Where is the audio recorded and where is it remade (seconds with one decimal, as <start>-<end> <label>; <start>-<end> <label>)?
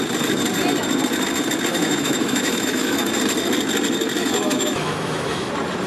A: 0.0-1.7 recorded; 1.7-3.1 remade; 3.1-4.2 recorded; 4.2-5.5 remade; 5.5-5.9 recorded